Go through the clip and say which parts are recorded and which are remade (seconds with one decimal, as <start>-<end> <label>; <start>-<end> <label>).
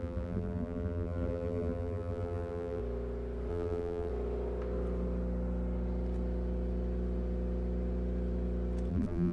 0.0-2.8 remade; 2.8-3.5 recorded; 3.5-4.1 remade; 4.1-8.9 recorded; 8.9-9.3 remade